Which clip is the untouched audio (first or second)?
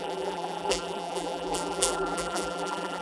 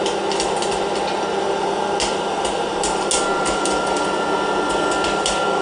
second